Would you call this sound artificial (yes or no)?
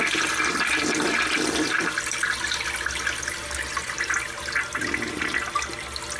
no